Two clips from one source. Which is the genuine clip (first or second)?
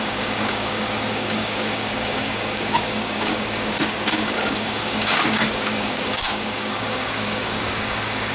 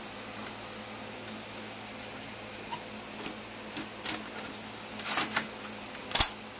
second